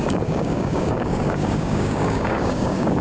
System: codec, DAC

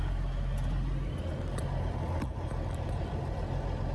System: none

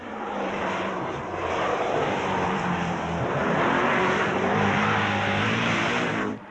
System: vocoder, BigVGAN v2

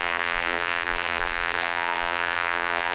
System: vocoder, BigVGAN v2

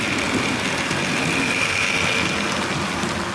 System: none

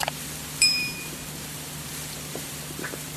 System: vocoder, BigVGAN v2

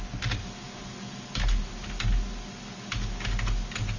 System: none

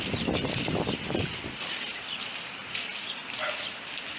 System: vocoder, BigVGAN v2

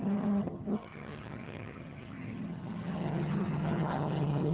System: vocoder, HiFi-GAN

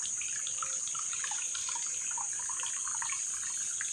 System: none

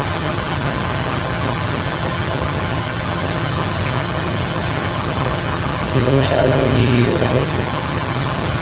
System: vocoder, HiFi-GAN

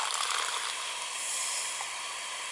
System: vocoder, BigVGAN v2